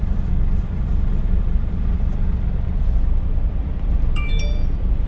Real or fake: fake